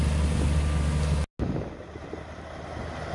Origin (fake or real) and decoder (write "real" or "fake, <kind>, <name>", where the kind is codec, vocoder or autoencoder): real